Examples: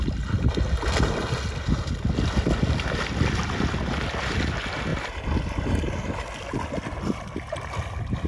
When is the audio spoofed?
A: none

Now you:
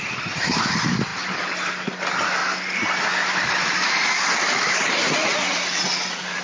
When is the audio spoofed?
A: none

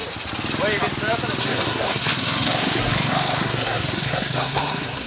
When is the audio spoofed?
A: 1.4-5.1

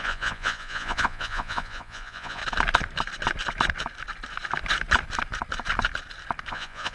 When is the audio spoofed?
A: 0.0-2.4; 6.5-6.9